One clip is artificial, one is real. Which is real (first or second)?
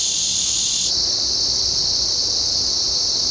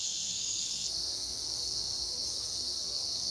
first